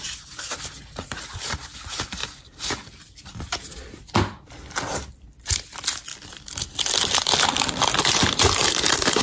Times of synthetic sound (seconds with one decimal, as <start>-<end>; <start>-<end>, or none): none